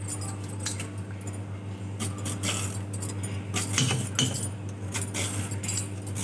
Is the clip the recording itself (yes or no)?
yes